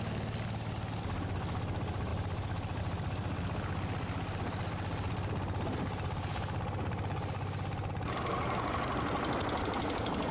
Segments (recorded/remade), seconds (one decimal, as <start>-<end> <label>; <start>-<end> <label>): 0.0-10.3 recorded